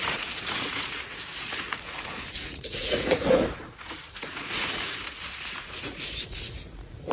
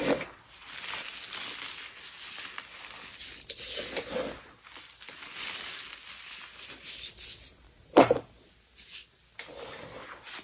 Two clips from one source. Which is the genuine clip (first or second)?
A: second